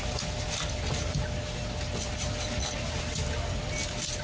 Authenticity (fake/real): real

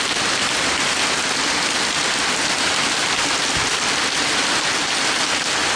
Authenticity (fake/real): real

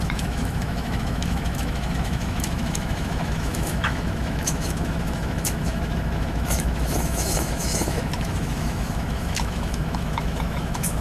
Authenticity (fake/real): fake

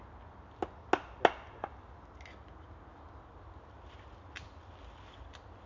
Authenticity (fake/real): real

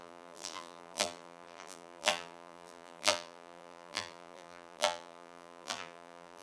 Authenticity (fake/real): fake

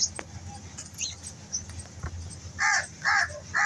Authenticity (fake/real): real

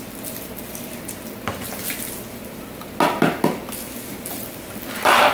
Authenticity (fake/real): real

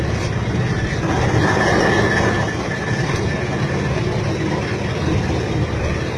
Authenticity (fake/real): fake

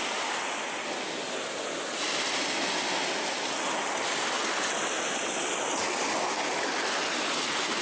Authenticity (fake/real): real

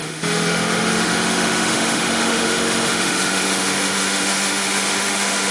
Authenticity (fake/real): fake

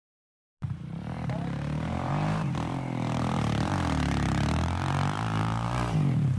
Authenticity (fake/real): fake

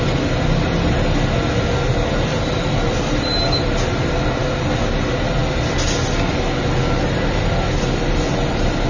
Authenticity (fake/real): real